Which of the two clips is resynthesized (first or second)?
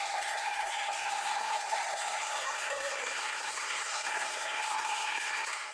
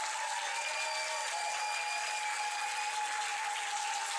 first